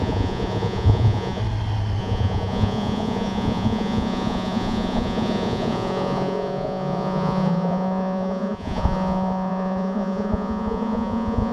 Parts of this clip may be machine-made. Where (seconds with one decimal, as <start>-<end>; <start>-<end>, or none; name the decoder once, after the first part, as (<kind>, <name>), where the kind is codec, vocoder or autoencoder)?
0.0-1.4 (vocoder, Vocos); 2.0-11.5